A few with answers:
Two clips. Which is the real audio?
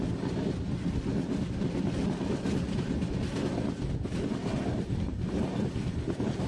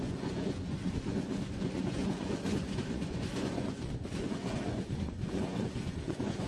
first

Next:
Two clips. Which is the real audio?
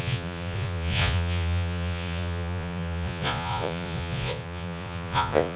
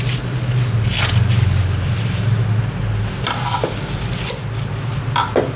second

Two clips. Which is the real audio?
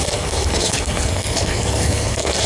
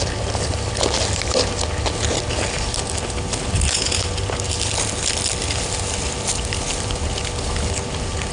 second